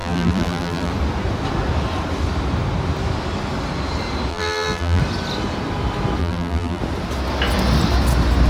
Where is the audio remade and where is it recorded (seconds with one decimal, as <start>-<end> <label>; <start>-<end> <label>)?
0.0-0.9 remade; 0.9-4.3 recorded; 4.3-5.0 remade; 5.0-6.2 recorded; 6.2-6.8 remade; 6.8-8.5 recorded